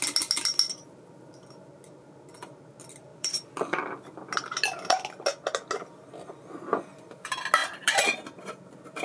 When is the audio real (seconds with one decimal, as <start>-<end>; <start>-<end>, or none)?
0.0-3.1; 3.9-7.6; 8.5-9.0